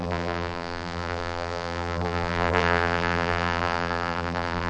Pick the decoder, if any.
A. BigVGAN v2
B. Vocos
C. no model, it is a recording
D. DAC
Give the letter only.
A